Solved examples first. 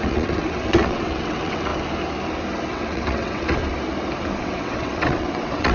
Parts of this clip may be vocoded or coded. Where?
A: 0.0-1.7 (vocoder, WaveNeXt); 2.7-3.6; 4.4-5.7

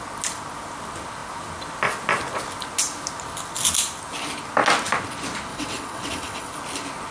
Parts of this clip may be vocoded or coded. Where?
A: 5.5-6.5 (vocoder, WaveNeXt)

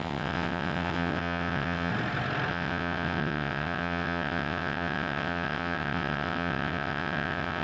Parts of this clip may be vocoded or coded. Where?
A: 0.0-1.9 (vocoder, WaveNeXt); 2.5-7.6

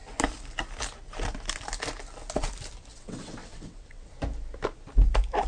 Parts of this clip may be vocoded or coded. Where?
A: 2.9-4.1 (vocoder, WaveNeXt)

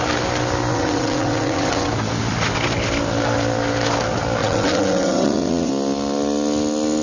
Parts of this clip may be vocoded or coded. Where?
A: 0.7-1.9 (vocoder, WaveNeXt); 4.4-5.7

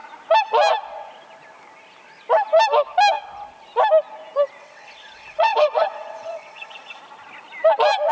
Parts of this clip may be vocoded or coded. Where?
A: 4.6-7.0 (vocoder, WaveNeXt)

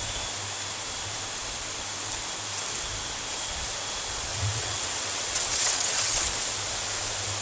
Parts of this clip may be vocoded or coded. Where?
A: 4.3-6.3 (vocoder, WaveNeXt)